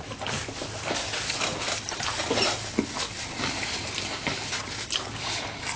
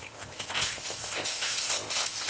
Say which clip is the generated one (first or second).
second